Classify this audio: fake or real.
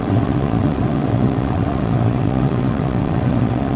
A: fake